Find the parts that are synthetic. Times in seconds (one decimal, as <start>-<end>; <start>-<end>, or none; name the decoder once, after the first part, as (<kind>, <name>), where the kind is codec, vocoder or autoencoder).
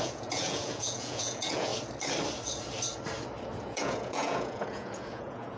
0.0-1.7 (vocoder, Vocos); 3.6-5.6